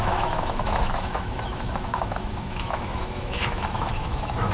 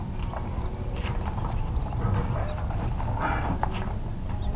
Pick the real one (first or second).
second